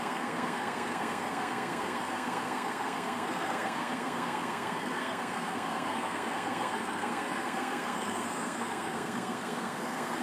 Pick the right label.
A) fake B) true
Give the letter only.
A